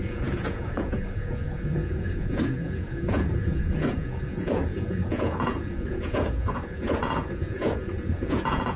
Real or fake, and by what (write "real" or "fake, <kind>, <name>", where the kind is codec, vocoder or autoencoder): fake, vocoder, Vocos